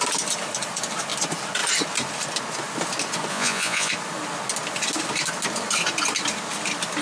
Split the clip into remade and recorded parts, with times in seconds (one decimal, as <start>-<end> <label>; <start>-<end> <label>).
0.0-3.3 recorded; 3.3-3.9 remade; 3.9-7.0 recorded